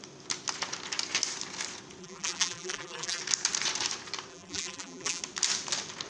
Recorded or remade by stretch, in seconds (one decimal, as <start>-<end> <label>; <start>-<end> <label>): 0.0-2.0 recorded; 2.0-3.2 remade; 3.2-4.3 recorded; 4.3-5.2 remade; 5.2-6.1 recorded